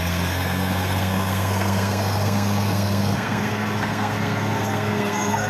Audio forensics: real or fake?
fake